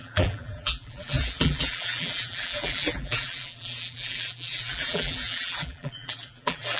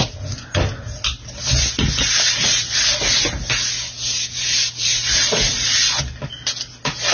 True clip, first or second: second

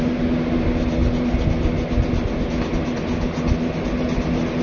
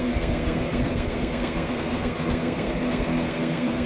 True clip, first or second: first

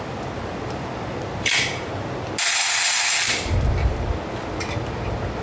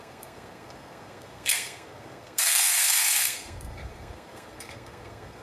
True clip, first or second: first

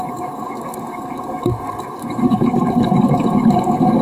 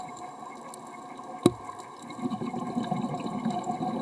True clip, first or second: second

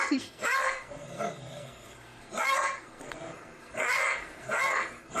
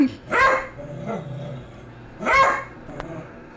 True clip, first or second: second